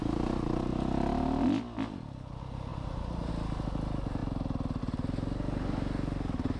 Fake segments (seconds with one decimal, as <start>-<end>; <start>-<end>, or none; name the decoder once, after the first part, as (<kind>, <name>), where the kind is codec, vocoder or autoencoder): 2.7-3.3 (vocoder, BigVGAN v2)